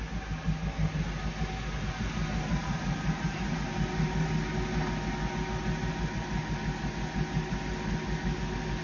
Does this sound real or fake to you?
real